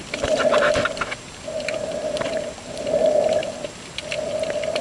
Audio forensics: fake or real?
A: real